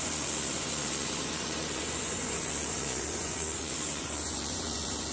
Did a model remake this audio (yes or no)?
yes